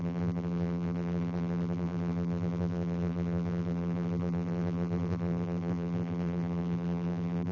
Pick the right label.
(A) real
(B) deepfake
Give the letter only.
B